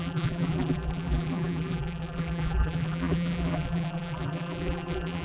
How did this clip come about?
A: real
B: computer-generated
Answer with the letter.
B